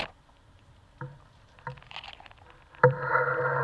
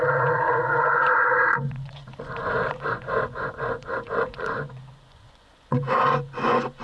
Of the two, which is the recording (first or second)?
first